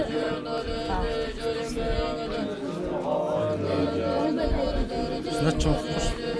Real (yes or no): yes